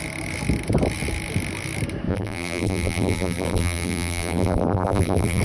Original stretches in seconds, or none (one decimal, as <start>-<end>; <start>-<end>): 0.0-2.1